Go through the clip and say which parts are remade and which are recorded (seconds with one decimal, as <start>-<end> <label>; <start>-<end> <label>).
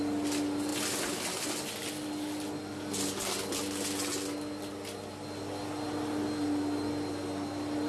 0.0-7.9 recorded